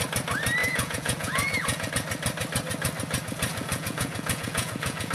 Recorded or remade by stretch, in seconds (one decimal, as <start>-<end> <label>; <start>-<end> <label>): 0.0-0.6 recorded; 0.6-1.9 remade; 1.9-3.5 recorded; 3.5-5.1 remade